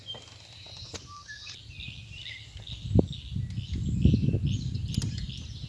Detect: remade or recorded recorded